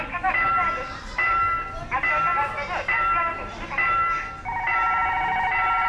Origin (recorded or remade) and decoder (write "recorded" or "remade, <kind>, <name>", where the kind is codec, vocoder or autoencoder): recorded